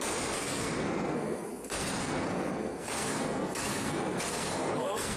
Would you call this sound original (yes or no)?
no